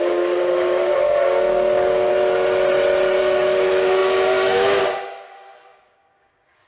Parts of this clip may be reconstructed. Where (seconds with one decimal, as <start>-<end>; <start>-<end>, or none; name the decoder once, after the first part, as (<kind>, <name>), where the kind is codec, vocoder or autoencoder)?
0.0-2.1 (codec, DAC); 3.2-6.7